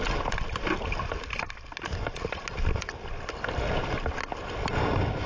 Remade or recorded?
recorded